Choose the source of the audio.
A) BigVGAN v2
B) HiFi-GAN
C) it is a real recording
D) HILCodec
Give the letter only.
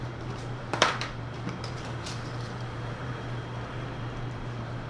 A